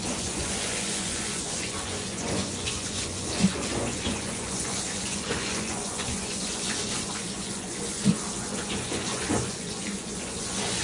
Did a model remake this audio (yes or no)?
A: yes